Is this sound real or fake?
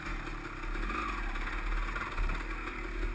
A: real